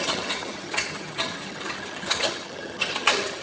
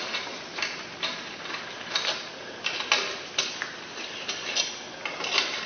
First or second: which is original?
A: second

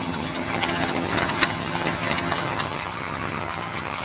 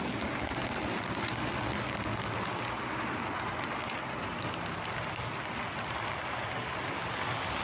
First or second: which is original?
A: second